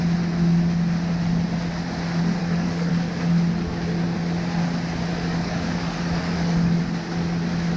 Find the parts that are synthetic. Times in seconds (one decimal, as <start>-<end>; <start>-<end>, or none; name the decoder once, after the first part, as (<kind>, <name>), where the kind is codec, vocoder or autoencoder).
2.4-2.9 (codec, DAC); 5.1-6.8